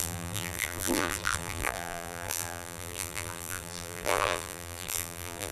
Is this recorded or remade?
remade